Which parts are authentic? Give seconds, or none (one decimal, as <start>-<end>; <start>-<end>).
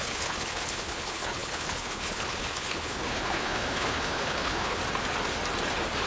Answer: 4.8-6.1